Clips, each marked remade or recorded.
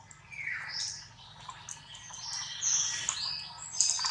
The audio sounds recorded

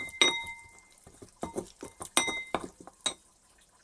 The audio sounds recorded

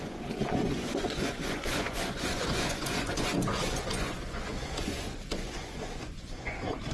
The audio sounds remade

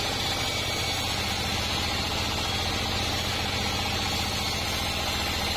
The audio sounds recorded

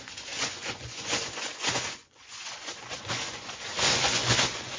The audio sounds remade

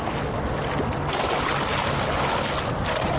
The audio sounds recorded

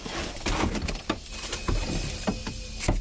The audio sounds recorded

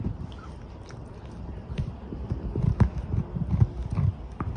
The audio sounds recorded